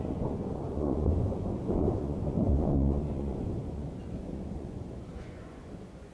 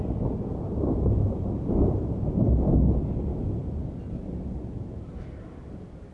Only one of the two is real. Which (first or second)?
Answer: second